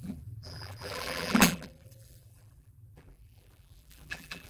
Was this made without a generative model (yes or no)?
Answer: no